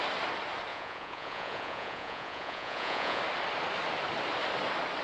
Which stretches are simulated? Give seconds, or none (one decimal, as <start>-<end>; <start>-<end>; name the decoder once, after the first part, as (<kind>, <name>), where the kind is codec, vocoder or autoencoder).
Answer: 0.7-3.2 (vocoder, Vocos)